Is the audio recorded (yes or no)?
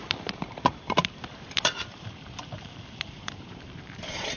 no